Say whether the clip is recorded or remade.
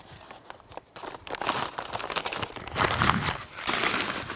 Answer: recorded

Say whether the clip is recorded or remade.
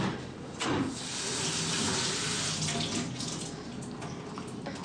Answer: recorded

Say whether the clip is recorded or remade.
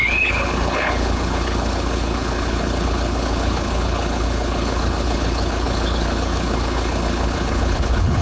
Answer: remade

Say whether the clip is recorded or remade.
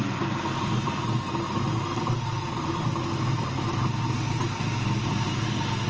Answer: recorded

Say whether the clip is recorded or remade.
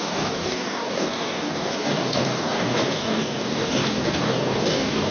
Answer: remade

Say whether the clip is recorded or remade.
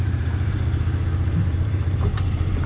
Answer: remade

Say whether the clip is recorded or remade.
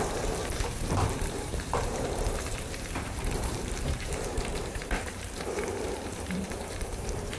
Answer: remade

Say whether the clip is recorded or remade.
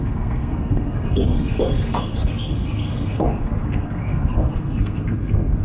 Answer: remade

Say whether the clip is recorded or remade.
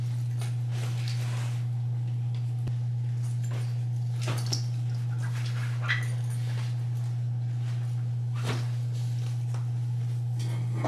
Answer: recorded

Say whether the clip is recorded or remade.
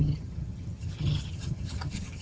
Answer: remade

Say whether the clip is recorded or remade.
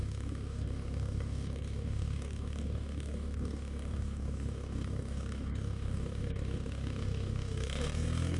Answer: remade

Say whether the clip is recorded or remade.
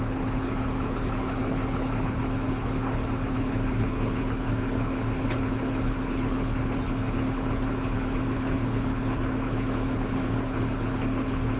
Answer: remade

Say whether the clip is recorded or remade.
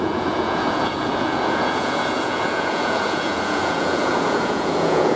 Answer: remade